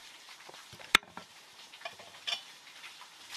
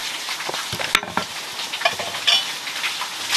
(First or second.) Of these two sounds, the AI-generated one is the first